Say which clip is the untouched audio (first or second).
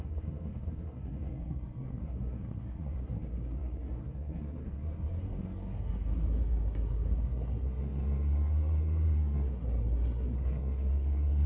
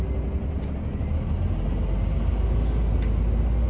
second